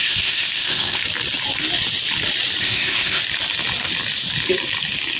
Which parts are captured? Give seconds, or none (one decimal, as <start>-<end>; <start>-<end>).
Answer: 1.0-2.6; 3.2-5.2